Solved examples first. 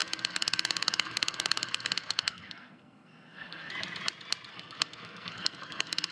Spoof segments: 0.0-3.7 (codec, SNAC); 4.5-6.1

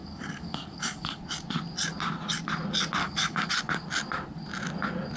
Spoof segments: 0.0-1.2 (codec, DAC); 3.0-3.5

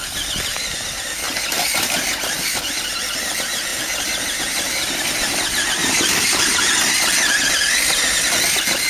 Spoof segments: 5.8-6.7 (vocoder, BigVGAN v2)

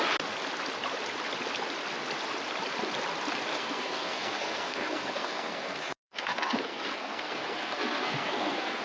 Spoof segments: 3.5-8.8 (codec, SNAC)